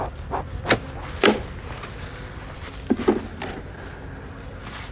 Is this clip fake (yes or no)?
no